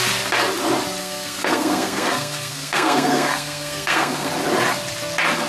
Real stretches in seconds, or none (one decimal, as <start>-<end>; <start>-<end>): 0.0-1.0; 4.3-5.5